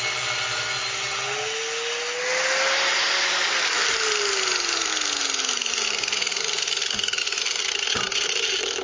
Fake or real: real